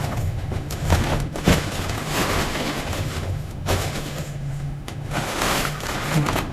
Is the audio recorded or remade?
remade